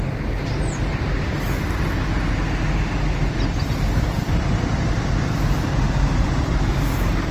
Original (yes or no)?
yes